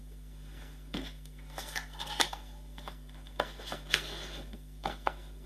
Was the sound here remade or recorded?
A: remade